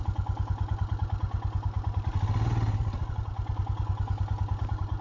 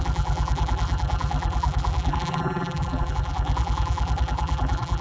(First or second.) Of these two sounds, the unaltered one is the first